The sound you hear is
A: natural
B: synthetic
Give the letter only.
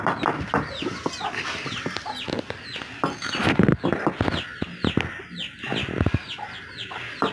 A